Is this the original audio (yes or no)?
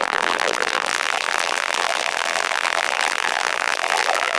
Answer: no